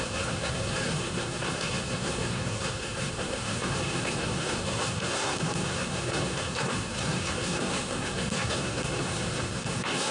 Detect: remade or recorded remade